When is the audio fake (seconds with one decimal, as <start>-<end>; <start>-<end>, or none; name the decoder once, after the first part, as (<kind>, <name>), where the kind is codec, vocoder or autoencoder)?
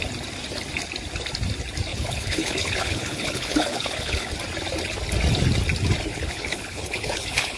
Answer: 1.9-4.3 (codec, HILCodec); 6.1-7.6